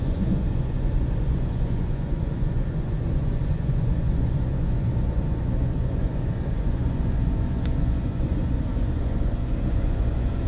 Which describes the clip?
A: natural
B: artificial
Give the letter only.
B